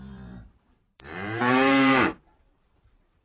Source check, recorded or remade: remade